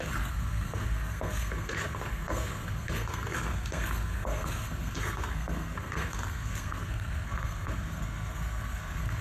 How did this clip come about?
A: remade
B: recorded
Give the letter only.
A